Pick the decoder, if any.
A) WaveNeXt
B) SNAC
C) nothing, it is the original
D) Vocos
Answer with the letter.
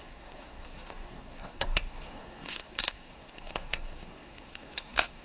B